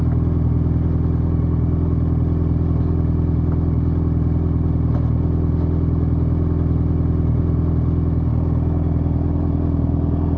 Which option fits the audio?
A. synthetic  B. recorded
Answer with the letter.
B